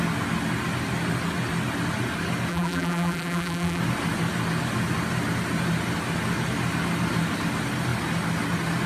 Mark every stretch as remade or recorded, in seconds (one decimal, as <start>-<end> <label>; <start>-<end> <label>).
0.0-2.5 recorded; 2.5-3.8 remade; 3.8-8.9 recorded